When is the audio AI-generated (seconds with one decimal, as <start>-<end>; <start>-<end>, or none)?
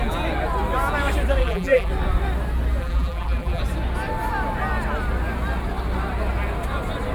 1.4-1.9; 2.8-3.6